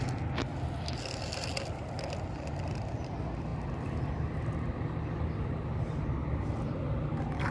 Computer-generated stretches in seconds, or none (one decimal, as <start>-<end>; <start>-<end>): none